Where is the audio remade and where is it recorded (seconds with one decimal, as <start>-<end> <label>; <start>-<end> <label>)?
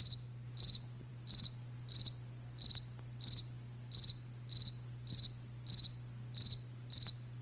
0.0-7.4 recorded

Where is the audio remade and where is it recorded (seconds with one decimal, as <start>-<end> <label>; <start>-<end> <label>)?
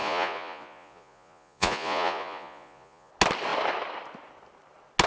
0.0-3.1 remade; 3.1-5.1 recorded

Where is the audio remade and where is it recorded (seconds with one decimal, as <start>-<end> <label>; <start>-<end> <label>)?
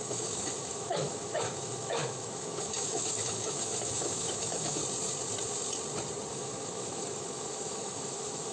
0.0-4.8 remade; 4.8-6.3 recorded; 6.3-8.5 remade